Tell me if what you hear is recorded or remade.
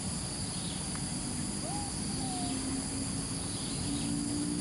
recorded